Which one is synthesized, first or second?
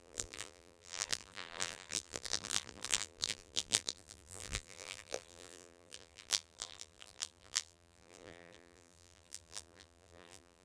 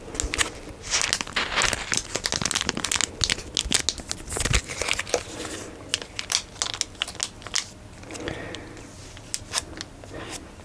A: first